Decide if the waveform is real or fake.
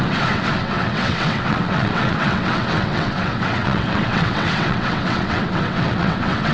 fake